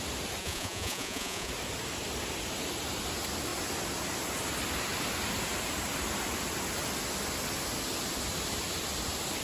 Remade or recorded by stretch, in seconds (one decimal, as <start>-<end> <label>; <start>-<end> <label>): 0.0-0.4 recorded; 0.4-1.5 remade; 1.5-9.4 recorded